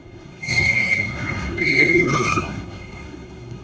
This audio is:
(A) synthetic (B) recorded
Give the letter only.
A